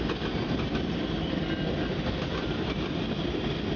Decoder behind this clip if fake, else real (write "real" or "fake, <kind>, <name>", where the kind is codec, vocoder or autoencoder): real